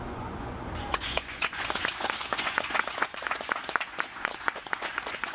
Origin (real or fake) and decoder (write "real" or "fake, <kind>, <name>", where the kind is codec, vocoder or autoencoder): fake, vocoder, Vocos